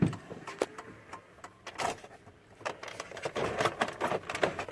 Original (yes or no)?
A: no